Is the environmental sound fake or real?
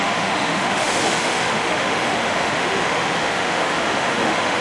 fake